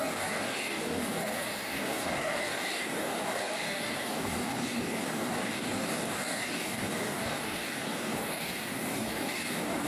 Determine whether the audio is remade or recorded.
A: remade